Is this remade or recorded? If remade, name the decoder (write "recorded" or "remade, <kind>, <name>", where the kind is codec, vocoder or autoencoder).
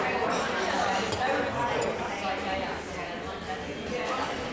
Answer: recorded